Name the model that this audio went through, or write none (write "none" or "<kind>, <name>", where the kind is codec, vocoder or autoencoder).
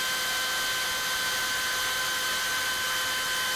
none